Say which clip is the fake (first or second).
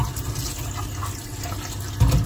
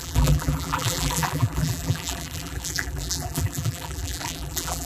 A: second